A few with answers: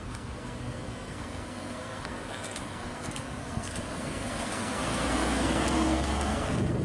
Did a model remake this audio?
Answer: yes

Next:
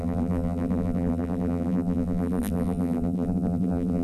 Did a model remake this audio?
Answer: yes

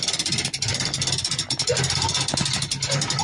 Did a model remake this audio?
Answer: no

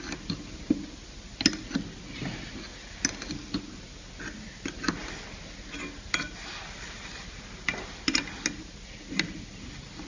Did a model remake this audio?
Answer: no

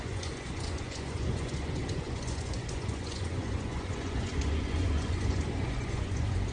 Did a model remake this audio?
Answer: yes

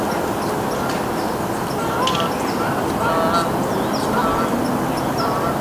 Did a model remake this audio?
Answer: no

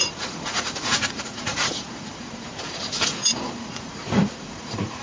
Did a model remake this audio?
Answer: yes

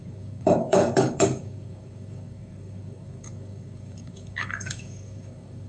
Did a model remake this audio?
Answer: yes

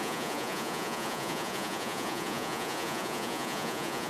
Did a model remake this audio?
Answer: yes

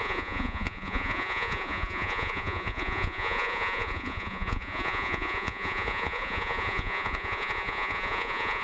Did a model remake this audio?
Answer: yes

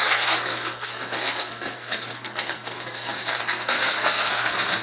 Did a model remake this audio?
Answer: yes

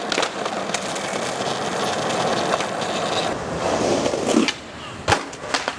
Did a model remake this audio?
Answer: no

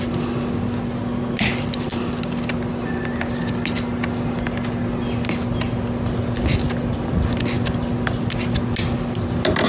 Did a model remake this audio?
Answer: no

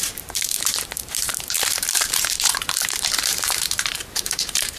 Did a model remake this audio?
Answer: yes